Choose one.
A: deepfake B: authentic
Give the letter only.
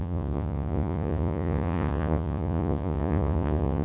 A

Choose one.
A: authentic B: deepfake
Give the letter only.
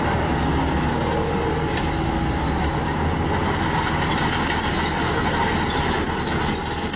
A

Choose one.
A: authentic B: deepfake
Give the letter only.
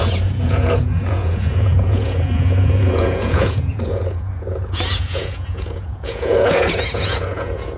B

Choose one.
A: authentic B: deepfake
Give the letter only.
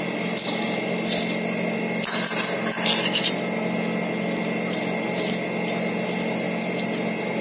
A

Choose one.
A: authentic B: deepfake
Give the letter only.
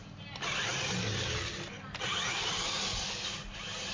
A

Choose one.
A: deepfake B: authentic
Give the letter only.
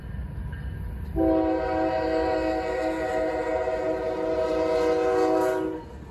B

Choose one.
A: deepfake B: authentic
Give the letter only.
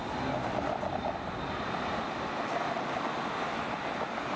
B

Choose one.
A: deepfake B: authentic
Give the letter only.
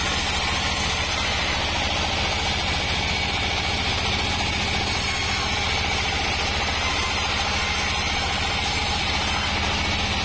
B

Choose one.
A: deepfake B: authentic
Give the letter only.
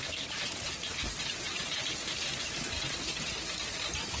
B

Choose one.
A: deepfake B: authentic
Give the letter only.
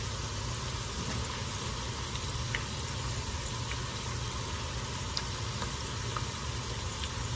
B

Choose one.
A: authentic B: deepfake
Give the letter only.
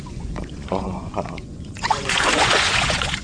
B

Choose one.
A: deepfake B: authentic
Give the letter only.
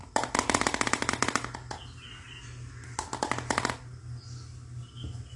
B